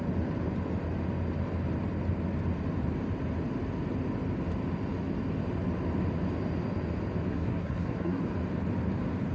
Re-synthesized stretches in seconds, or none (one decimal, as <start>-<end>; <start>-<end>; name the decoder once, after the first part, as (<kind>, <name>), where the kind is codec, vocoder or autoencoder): 7.3-8.2 (codec, SNAC)